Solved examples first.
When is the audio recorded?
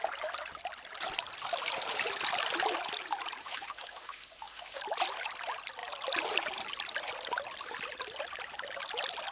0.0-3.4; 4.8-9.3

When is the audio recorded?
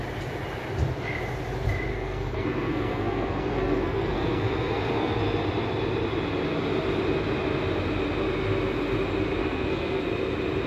0.0-1.9; 5.2-9.4; 10.0-10.7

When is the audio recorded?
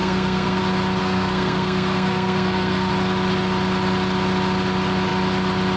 0.6-1.0; 2.9-5.8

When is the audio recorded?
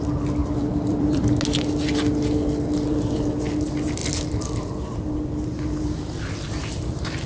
0.0-0.4; 1.2-7.3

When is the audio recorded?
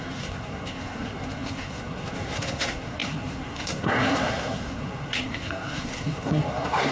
none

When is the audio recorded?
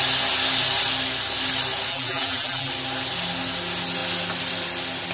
0.0-1.9; 2.7-5.1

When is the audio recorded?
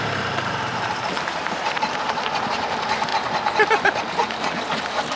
3.1-3.7